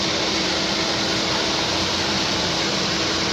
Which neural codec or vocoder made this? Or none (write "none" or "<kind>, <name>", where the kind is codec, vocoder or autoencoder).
vocoder, BigVGAN v2